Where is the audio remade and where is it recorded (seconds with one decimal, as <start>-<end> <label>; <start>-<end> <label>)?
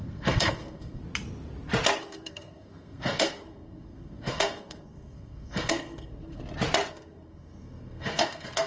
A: 0.0-1.0 remade; 1.0-2.0 recorded; 2.0-6.4 remade; 6.4-6.9 recorded; 6.9-8.7 remade